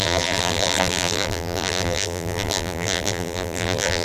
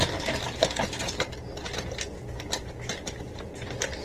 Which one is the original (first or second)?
second